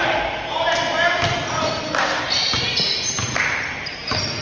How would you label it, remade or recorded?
recorded